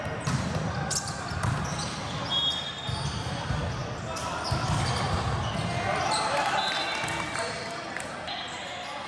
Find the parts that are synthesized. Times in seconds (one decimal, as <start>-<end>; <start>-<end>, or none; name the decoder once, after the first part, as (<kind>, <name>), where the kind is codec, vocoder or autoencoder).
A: none